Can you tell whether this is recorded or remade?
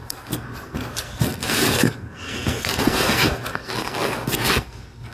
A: remade